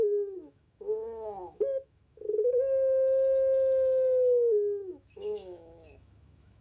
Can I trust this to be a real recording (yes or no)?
no